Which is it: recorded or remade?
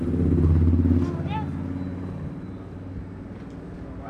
recorded